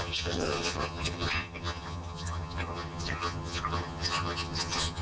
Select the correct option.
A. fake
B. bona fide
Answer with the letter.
A